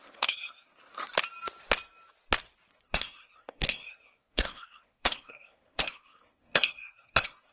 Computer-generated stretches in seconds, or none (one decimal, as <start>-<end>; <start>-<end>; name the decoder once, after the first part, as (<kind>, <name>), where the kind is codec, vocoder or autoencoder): 0.0-1.1 (codec, SNAC); 2.7-7.5